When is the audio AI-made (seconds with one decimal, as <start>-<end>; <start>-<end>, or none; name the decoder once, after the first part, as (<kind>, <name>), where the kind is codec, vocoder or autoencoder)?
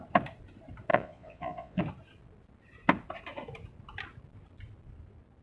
0.9-1.8 (vocoder, Vocos)